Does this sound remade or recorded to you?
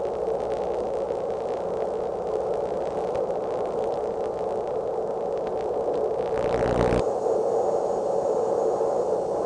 recorded